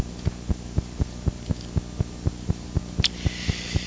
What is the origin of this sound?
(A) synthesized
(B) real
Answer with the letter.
B